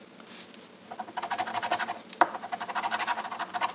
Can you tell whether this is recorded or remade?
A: recorded